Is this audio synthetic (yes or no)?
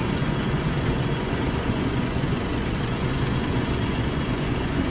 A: yes